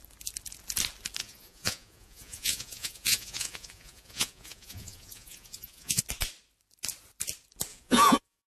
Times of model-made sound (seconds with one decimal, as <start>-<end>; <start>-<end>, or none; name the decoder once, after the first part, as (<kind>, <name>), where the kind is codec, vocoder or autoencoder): 1.2-6.0 (vocoder, Vocos); 7.7-8.5